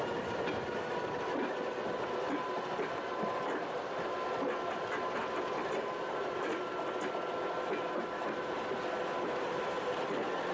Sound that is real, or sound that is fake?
real